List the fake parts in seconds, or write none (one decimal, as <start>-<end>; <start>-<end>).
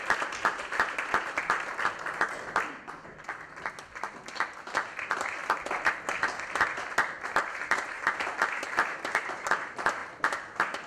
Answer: 0.0-1.7; 4.7-5.4; 7.5-10.9